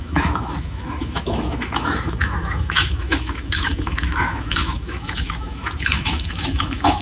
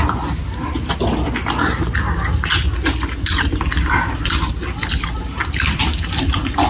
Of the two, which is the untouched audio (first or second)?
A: second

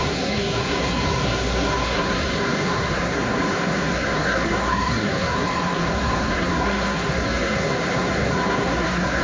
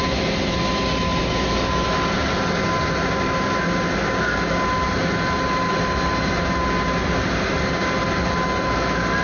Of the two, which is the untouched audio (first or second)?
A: second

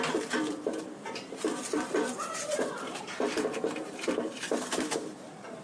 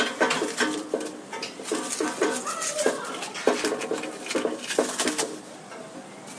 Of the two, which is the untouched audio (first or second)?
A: second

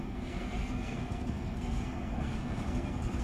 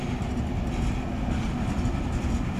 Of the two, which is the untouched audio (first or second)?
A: second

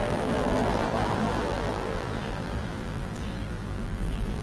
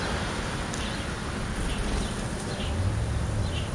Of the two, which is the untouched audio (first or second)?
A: second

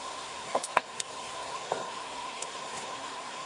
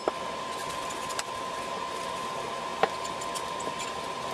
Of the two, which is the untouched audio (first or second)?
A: second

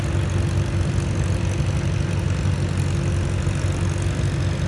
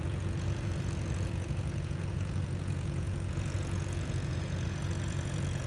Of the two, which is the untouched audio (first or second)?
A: first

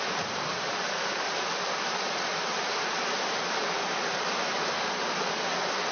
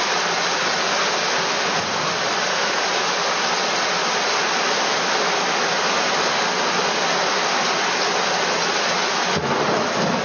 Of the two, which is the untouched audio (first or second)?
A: second